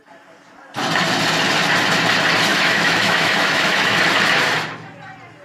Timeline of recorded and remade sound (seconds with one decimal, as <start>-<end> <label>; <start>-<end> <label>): 0.0-2.5 recorded; 2.5-4.0 remade; 4.0-5.4 recorded